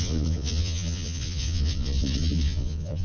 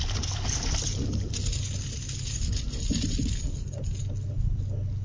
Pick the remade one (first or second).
first